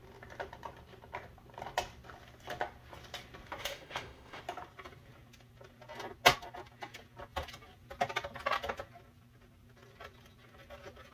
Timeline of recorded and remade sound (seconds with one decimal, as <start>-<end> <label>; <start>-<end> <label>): 0.0-3.6 recorded; 3.6-4.4 remade; 4.4-11.1 recorded